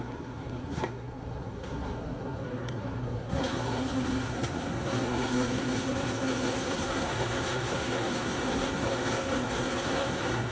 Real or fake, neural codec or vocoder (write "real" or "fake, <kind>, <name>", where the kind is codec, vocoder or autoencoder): fake, codec, SNAC